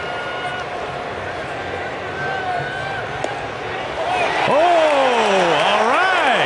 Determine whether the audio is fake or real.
real